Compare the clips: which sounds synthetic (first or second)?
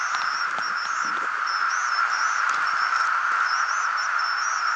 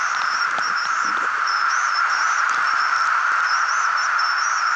second